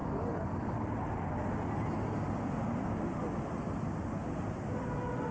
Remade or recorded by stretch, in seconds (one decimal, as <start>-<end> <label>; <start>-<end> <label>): 0.0-5.3 recorded